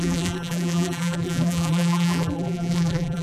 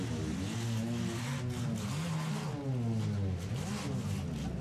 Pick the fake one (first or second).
first